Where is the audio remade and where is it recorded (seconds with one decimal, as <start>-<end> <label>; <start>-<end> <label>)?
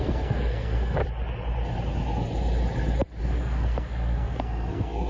0.0-1.0 remade; 1.0-3.2 recorded; 3.2-5.1 remade